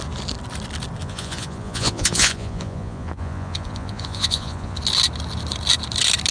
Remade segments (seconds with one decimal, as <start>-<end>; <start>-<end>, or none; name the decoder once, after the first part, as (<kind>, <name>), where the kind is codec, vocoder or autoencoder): 1.0-4.8 (vocoder, Vocos)